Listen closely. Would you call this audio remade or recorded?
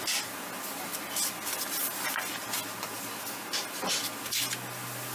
recorded